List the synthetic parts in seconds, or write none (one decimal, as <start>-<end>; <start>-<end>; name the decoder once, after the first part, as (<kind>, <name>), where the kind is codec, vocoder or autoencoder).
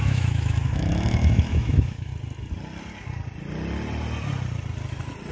0.0-2.1 (autoencoder, DAC-VAE)